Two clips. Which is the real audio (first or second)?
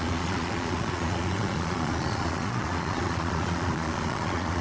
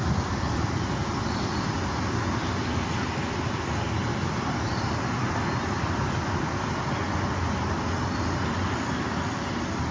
second